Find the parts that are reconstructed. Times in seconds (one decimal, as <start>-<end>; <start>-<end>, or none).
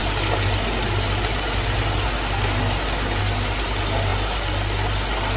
none